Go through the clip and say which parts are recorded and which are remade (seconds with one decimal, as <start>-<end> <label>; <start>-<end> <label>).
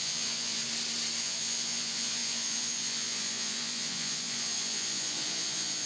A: 0.0-0.6 remade; 0.6-1.2 recorded; 1.2-5.9 remade